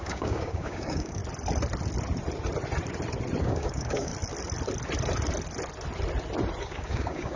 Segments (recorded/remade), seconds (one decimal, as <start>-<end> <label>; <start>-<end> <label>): 0.0-1.2 remade; 1.2-3.4 recorded; 3.4-4.1 remade; 4.1-6.6 recorded; 6.6-7.4 remade